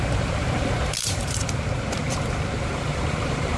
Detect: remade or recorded remade